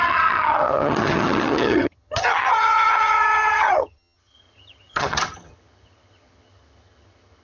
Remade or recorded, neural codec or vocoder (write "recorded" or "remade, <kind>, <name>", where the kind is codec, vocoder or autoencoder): remade, vocoder, HiFi-GAN